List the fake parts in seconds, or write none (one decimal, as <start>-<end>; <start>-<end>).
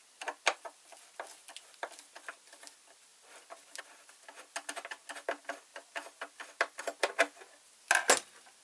none